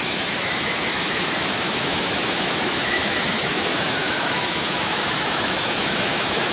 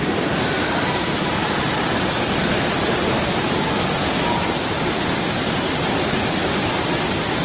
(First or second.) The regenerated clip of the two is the first